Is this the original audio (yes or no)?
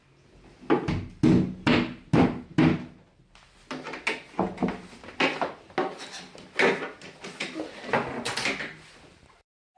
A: yes